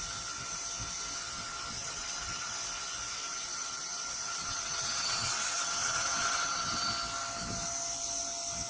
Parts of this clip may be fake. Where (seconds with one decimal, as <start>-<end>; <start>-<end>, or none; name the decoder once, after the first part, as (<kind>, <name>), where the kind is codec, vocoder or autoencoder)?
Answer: 1.8-2.5 (vocoder, WaveNeXt); 3.3-6.9